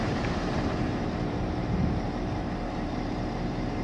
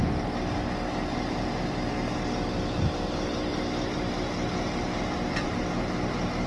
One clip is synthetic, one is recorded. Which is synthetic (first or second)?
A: first